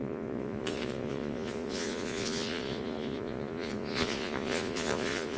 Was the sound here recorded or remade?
remade